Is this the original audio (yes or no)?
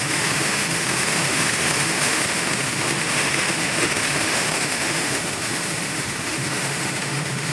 no